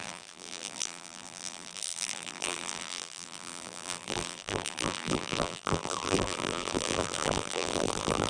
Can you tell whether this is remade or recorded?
remade